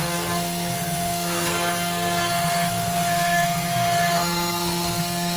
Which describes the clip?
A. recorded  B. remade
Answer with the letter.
B